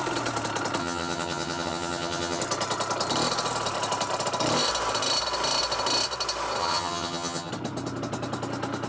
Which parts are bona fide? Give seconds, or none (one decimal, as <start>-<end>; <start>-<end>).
0.0-0.8; 2.4-6.6; 7.5-8.9